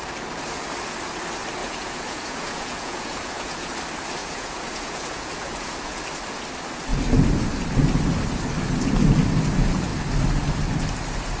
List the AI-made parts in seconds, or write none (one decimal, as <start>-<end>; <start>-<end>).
1.6-3.7; 4.2-6.0